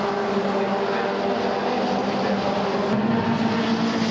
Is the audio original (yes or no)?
yes